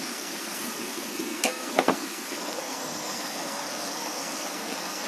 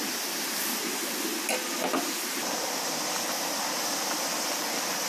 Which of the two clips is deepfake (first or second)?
first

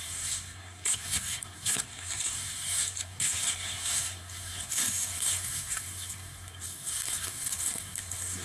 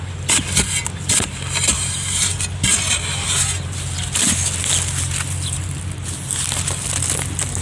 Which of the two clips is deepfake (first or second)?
first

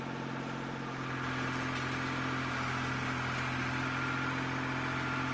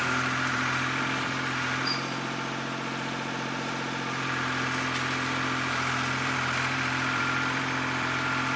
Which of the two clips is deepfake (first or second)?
second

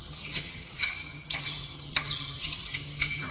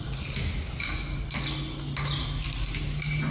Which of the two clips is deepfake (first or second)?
first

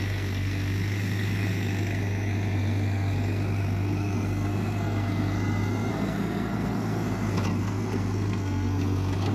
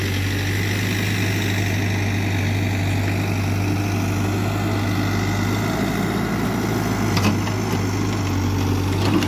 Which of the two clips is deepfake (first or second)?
first